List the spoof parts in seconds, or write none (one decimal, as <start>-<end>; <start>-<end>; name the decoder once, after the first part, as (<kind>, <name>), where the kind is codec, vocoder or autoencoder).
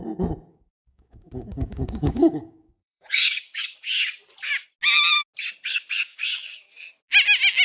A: 0.5-3.9 (codec, DAC); 6.1-6.7